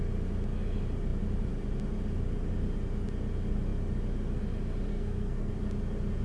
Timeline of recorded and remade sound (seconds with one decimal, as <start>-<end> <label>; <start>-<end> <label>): 0.0-4.9 recorded; 4.9-5.5 remade; 5.5-6.2 recorded